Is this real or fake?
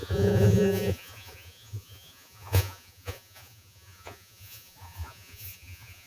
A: fake